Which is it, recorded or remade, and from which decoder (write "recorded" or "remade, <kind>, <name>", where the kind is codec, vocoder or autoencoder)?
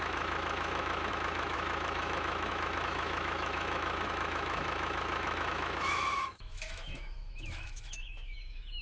remade, autoencoder, DAC-VAE